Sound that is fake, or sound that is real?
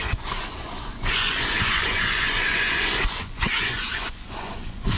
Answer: fake